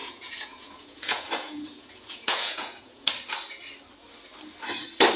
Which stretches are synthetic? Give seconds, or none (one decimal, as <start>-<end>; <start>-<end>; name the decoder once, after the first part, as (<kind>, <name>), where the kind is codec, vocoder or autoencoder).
0.0-3.1 (vocoder, Vocos)